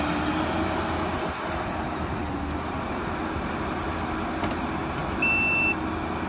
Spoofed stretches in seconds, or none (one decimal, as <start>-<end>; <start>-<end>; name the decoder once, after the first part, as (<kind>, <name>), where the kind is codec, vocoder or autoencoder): none